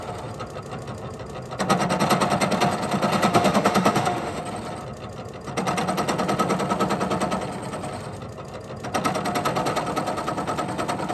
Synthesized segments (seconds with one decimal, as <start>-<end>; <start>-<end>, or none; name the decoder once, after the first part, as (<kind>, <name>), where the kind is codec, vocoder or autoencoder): 3.3-4.4 (autoencoder, DAC-VAE)